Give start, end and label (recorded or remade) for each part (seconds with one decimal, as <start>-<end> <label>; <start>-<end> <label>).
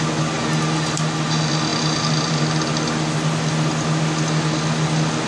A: 0.0-5.3 recorded